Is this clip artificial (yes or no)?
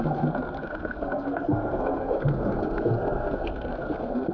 yes